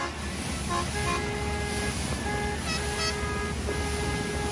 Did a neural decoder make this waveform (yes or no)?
no